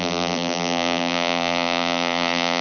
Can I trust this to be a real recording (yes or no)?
no